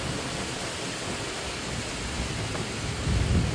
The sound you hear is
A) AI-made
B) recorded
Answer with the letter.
B